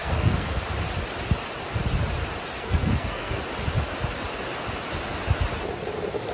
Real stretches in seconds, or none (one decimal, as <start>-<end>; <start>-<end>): 0.6-2.5; 3.4-6.3